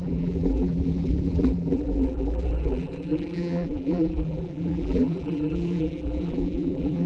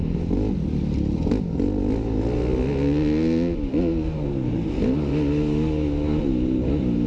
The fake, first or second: first